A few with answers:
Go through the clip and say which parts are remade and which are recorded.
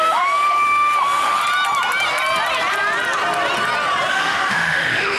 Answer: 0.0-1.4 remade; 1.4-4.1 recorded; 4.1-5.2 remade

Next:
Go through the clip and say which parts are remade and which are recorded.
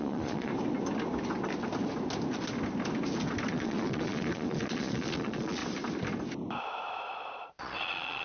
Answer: 0.0-0.5 remade; 0.5-3.5 recorded; 3.5-5.6 remade; 5.6-7.0 recorded; 7.0-8.2 remade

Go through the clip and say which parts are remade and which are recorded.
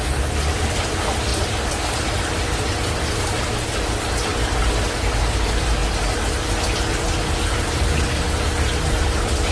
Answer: 0.0-9.5 recorded